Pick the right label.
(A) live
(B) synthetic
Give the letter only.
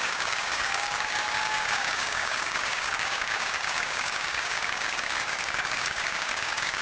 B